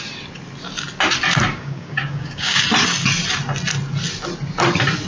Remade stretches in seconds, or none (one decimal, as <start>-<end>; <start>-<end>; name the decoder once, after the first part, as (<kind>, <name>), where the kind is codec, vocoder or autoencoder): 1.5-2.6 (codec, DAC)